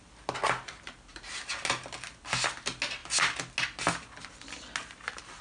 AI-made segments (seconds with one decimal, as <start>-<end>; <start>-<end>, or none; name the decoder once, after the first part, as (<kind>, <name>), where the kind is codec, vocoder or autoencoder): none